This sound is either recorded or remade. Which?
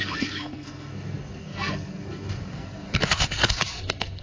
remade